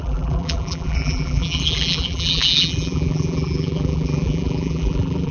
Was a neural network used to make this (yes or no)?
yes